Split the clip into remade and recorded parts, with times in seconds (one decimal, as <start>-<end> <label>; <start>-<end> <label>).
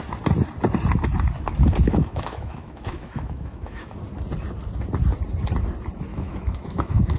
0.0-1.8 recorded; 1.8-3.9 remade; 3.9-6.1 recorded; 6.1-7.2 remade